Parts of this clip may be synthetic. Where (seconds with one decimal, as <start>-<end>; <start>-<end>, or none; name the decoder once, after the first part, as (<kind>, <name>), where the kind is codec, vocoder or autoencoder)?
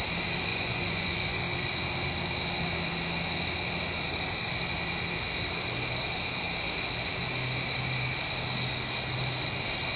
0.5-1.4 (vocoder, Vocos)